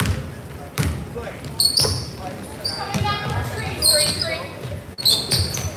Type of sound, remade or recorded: recorded